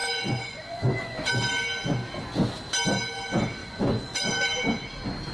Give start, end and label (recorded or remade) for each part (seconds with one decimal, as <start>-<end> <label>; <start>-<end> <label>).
0.0-1.3 remade; 1.3-3.6 recorded; 3.6-4.3 remade; 4.3-5.3 recorded